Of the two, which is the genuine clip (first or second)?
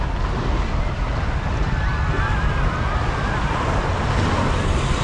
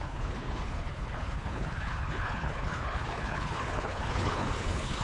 first